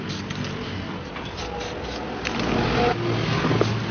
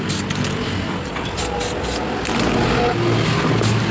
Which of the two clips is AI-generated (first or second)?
second